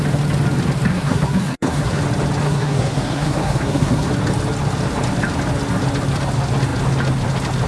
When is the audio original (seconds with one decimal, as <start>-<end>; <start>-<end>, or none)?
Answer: 0.0-0.9; 2.0-2.4; 4.1-7.7